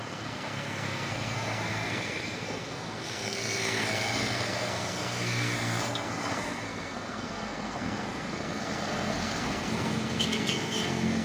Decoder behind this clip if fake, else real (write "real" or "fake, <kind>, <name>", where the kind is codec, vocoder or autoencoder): fake, codec, SNAC